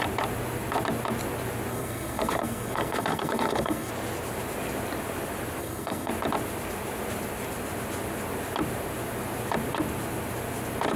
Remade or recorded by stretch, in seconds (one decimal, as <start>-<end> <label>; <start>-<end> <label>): 0.0-1.7 recorded; 1.7-3.9 remade; 3.9-5.6 recorded; 5.6-6.1 remade; 6.1-11.0 recorded